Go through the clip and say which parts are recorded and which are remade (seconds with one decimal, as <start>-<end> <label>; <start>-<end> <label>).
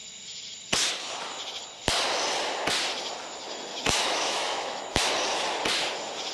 0.0-3.7 recorded; 3.7-5.1 remade; 5.1-6.3 recorded